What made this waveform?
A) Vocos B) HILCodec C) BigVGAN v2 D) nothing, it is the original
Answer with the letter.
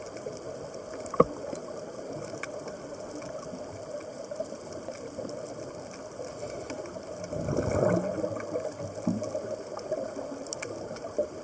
D